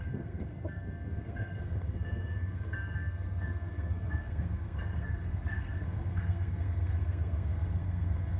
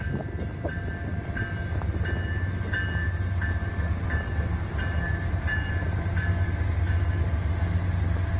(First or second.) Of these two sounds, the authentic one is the second